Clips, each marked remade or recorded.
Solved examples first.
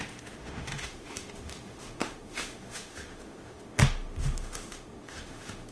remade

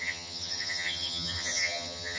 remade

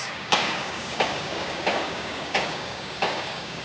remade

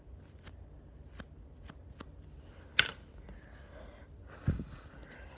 recorded